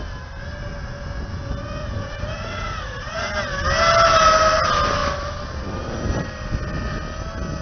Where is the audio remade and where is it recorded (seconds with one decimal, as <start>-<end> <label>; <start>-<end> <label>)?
0.0-1.8 recorded; 1.8-3.3 remade; 3.3-7.6 recorded

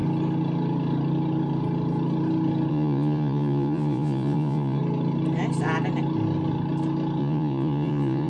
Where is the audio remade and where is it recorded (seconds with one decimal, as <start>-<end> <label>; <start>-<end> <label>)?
0.0-2.7 recorded; 2.7-4.8 remade; 4.8-7.2 recorded; 7.2-8.3 remade

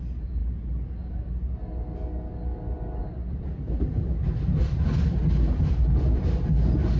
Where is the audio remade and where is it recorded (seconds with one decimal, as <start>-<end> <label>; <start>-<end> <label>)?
0.0-7.0 recorded

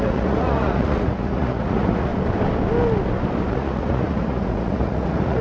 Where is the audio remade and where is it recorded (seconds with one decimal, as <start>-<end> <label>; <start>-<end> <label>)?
0.0-2.1 remade; 2.1-3.5 recorded; 3.5-5.4 remade